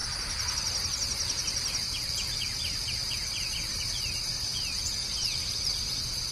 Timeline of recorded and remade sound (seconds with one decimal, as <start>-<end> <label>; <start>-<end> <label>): 0.0-6.3 recorded